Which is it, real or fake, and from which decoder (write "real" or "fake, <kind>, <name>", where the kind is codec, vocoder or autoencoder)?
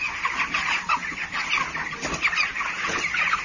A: real